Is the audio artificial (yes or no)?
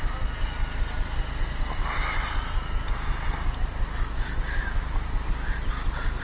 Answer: no